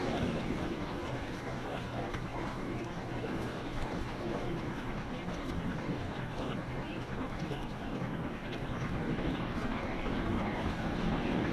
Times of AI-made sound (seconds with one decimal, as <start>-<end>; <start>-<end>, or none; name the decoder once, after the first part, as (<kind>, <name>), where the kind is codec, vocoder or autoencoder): 0.0-11.5 (codec, DAC)

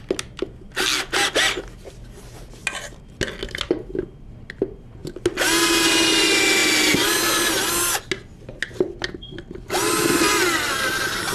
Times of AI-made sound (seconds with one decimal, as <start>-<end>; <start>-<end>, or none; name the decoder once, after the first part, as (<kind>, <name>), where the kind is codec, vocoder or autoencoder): none

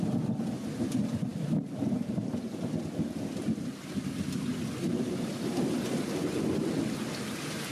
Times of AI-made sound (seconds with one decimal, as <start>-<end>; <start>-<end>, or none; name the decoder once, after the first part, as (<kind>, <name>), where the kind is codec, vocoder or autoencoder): none

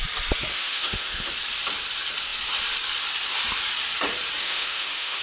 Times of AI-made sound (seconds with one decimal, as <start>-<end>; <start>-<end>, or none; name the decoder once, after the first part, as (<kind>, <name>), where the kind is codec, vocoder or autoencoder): 0.5-1.3 (autoencoder, DAC-VAE); 4.4-5.2

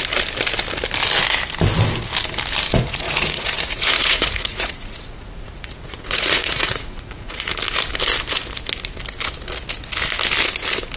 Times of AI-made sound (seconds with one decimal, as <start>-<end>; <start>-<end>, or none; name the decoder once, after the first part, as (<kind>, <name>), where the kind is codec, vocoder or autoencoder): 2.7-7.5 (vocoder, Vocos)

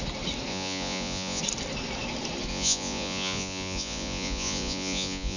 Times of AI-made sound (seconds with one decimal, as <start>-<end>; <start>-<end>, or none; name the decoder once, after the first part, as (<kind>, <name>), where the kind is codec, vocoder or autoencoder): 0.5-1.4 (vocoder, Vocos); 2.5-5.4

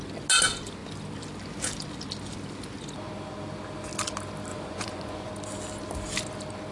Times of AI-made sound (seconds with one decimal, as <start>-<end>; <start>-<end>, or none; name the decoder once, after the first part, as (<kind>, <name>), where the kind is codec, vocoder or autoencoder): 4.5-5.3 (vocoder, Vocos)

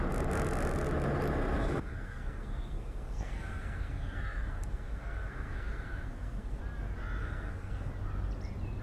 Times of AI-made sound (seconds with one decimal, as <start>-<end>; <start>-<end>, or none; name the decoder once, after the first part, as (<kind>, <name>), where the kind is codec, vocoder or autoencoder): 1.6-6.6 (codec, SNAC); 7.2-7.9